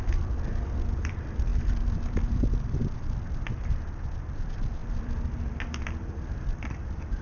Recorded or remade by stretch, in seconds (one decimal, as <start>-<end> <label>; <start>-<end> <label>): 0.0-7.2 remade